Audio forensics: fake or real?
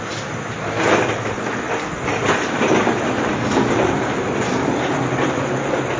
real